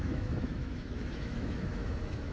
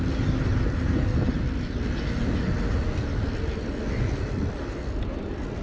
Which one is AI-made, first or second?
first